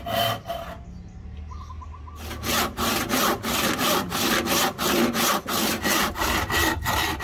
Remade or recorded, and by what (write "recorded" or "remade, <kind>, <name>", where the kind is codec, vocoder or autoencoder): recorded